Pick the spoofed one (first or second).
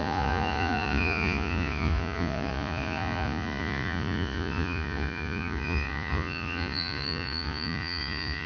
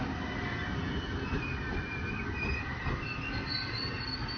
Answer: first